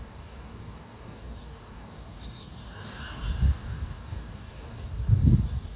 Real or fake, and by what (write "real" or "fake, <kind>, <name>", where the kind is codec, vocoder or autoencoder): fake, codec, DAC